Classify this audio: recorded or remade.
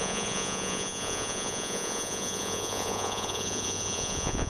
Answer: remade